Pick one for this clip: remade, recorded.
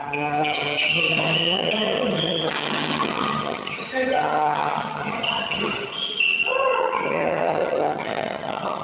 remade